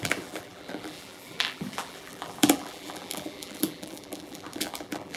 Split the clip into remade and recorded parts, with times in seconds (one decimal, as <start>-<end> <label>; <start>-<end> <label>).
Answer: 0.0-5.2 remade

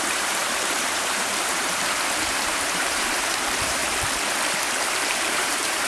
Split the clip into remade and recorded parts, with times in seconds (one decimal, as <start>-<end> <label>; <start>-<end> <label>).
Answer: 0.0-3.8 remade; 3.8-4.9 recorded; 4.9-5.9 remade

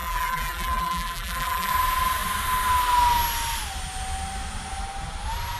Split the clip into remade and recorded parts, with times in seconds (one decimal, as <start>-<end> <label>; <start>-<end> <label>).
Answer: 0.0-1.7 remade; 1.7-5.6 recorded

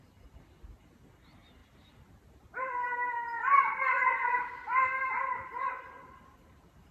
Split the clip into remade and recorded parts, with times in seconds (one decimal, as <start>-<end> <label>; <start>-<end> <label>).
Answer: 0.0-3.5 recorded; 3.5-4.6 remade; 4.6-6.9 recorded